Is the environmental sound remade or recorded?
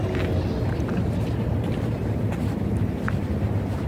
recorded